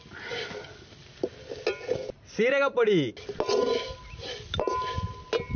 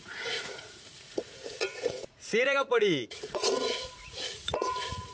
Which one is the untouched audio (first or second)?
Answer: first